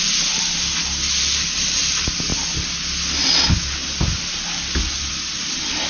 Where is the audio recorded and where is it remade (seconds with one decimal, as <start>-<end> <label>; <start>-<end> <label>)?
0.0-5.9 recorded